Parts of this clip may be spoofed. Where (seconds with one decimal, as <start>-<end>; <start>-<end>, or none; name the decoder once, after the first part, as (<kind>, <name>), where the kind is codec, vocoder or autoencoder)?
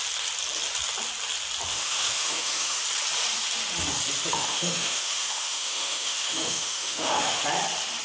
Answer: 1.7-2.8 (autoencoder, DAC-VAE); 4.3-7.4